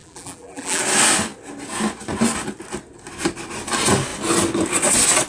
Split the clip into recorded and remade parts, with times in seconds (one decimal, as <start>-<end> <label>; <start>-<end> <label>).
0.0-0.8 remade; 0.8-5.3 recorded